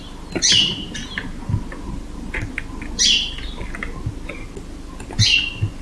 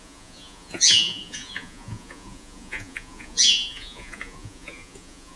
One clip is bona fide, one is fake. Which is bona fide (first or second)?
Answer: first